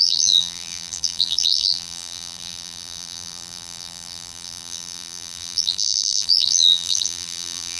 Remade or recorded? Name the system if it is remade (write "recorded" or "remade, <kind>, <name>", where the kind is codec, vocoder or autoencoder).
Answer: remade, vocoder, BigVGAN v2